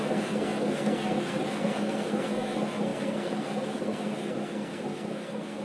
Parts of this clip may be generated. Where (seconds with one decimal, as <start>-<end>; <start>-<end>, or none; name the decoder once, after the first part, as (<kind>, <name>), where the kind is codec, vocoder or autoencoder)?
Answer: 0.0-5.6 (codec, SNAC)